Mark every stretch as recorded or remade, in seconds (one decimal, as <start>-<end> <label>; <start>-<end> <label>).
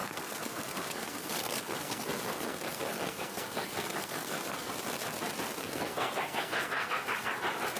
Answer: 0.0-4.7 remade; 4.7-5.6 recorded; 5.6-7.3 remade; 7.3-7.8 recorded